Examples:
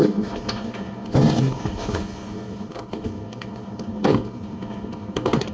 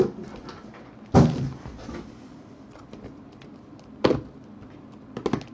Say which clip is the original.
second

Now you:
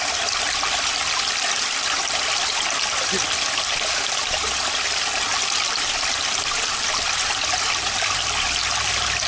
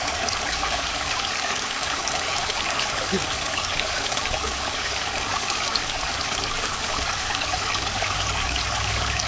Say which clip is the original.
first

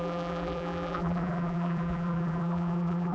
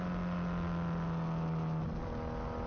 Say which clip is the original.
second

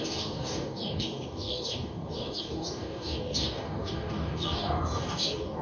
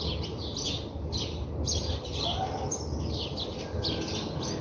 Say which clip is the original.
second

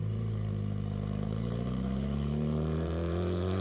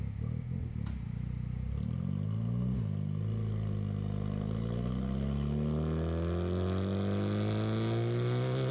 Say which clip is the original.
second